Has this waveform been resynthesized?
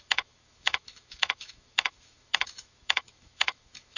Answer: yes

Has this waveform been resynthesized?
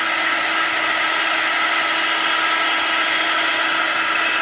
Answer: no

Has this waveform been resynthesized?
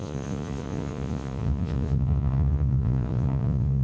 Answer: yes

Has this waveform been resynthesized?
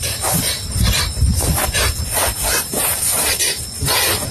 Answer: yes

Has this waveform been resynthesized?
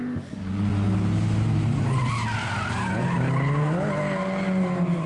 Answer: no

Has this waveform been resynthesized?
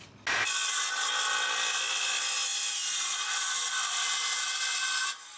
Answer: no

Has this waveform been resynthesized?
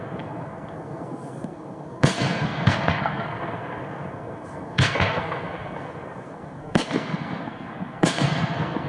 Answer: yes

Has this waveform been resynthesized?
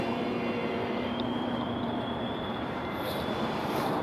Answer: yes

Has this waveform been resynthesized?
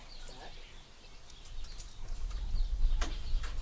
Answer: no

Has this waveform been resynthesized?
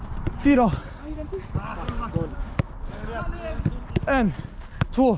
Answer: no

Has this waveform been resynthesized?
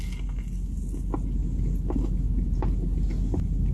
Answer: no